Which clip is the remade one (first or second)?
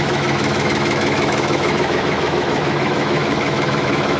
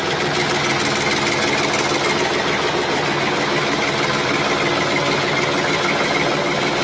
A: first